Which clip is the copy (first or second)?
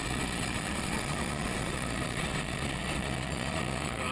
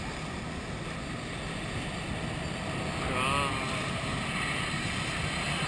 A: first